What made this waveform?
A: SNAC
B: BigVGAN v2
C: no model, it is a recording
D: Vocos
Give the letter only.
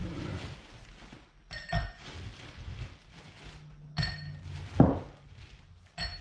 C